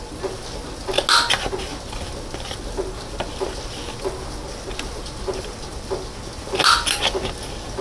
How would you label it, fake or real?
real